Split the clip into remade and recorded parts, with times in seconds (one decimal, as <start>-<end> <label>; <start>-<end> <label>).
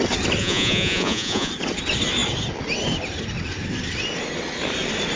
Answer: 0.0-0.4 recorded; 0.4-1.5 remade; 1.5-5.2 recorded